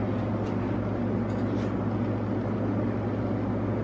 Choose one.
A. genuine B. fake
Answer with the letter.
A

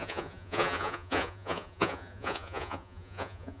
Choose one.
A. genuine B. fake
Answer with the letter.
B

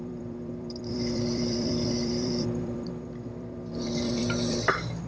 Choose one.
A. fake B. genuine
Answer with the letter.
A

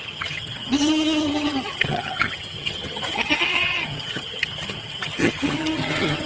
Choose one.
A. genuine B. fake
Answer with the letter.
B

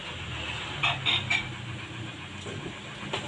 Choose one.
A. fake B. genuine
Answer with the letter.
B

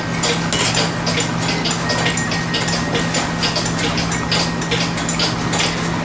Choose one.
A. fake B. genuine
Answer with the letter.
B